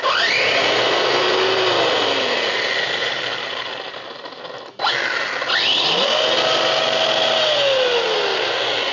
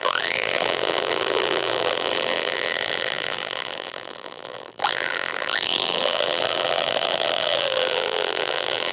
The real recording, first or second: first